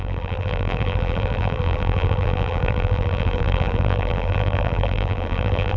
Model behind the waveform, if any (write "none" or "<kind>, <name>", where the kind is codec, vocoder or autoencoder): vocoder, BigVGAN v2